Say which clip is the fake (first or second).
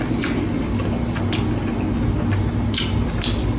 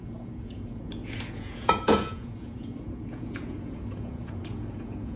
second